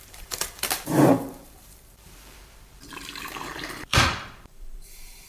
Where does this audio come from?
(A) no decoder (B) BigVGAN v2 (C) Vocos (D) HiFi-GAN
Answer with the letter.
B